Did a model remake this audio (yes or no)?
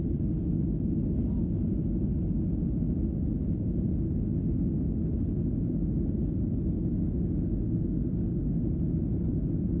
no